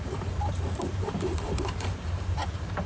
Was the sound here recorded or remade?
remade